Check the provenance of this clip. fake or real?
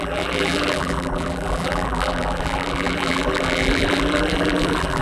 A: fake